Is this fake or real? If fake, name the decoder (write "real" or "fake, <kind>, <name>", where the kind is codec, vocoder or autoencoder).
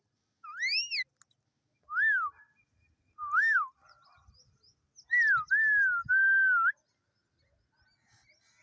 real